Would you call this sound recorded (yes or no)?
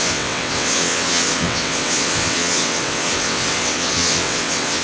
no